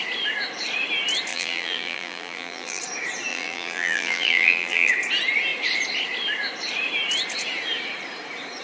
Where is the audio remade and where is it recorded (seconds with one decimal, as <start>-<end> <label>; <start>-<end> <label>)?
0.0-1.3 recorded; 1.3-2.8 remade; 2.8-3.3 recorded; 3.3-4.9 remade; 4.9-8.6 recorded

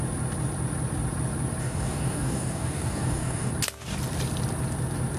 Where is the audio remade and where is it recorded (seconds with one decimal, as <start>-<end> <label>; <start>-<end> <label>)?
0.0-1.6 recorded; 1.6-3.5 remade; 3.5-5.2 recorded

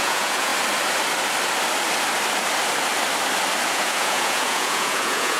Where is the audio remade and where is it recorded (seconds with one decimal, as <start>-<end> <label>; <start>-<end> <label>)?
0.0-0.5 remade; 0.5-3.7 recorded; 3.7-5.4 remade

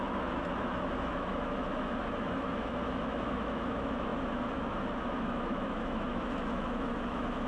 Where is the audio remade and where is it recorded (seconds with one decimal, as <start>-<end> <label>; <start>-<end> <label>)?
0.0-7.5 remade